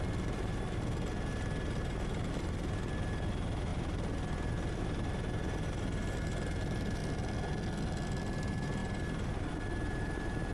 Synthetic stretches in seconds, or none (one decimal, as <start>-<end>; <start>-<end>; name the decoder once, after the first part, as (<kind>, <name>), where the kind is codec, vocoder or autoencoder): 0.0-7.0 (vocoder, BigVGAN v2); 8.3-10.5